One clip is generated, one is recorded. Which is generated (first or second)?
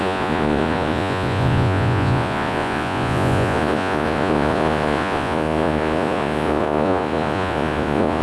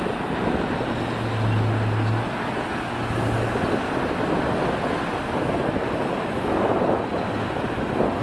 first